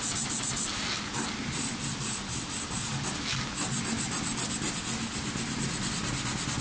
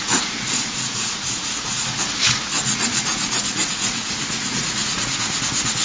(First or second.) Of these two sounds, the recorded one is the first